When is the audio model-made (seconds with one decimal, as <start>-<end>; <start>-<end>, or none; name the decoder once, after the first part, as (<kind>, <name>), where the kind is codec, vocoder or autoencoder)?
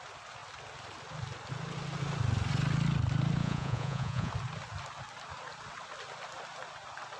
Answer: 3.4-4.3 (vocoder, Vocos)